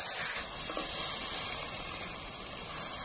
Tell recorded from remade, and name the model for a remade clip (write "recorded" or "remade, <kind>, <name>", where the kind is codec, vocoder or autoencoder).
recorded